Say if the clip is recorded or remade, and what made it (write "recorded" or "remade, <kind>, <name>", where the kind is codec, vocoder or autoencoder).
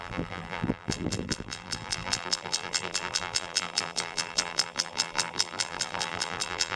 remade, vocoder, BigVGAN v2